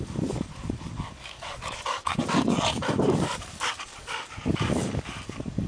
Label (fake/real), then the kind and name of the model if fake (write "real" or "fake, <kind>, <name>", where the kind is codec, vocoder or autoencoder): fake, codec, DAC